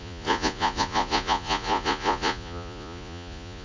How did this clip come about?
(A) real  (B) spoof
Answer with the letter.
B